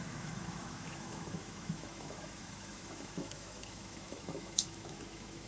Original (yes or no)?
no